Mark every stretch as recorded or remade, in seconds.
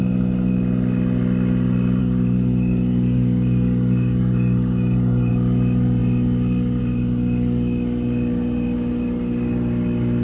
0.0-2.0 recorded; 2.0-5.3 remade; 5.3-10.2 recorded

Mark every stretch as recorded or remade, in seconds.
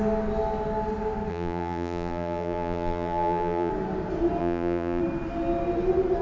0.0-1.3 recorded; 1.3-3.7 remade; 3.7-4.4 recorded; 4.4-5.0 remade; 5.0-6.2 recorded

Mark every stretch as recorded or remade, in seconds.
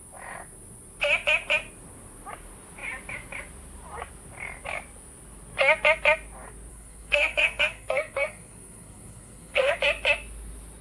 0.0-6.7 recorded; 6.7-9.7 remade; 9.7-10.8 recorded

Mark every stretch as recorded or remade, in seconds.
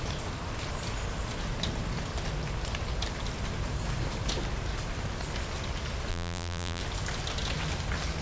0.0-6.1 recorded; 6.1-6.8 remade; 6.8-8.2 recorded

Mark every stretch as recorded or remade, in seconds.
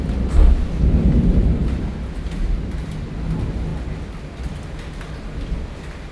0.0-6.1 recorded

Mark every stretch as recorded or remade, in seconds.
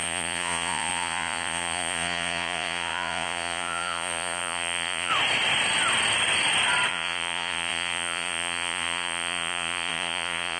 0.0-5.1 remade; 5.1-6.9 recorded; 6.9-10.6 remade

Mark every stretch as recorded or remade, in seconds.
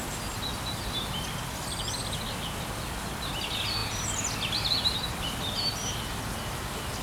0.0-7.0 recorded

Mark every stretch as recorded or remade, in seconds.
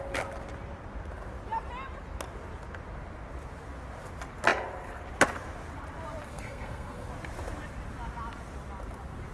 0.0-6.3 recorded; 6.3-7.1 remade; 7.1-9.3 recorded